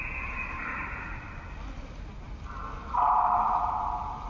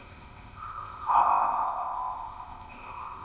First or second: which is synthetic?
second